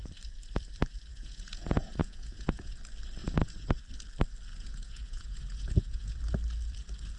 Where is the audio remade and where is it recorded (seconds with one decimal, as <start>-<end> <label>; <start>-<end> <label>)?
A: 0.0-1.1 recorded; 1.1-2.8 remade; 2.8-3.2 recorded; 3.2-3.8 remade; 3.8-4.5 recorded; 4.5-6.2 remade; 6.2-7.2 recorded